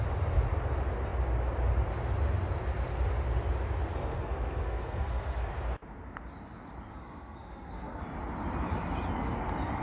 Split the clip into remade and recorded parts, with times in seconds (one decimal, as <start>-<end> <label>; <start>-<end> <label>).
0.0-3.9 recorded; 3.9-5.5 remade; 5.5-6.9 recorded; 6.9-8.0 remade; 8.0-9.8 recorded